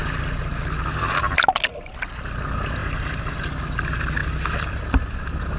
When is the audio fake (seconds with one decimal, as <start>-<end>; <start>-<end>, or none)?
2.8-3.6; 4.2-5.6